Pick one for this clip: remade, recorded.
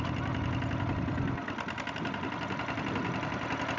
recorded